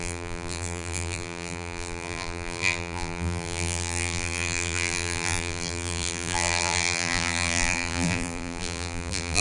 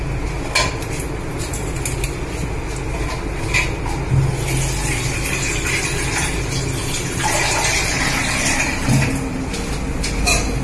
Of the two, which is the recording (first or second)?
second